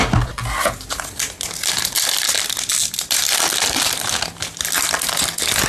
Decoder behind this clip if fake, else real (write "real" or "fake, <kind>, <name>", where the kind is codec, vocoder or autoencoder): real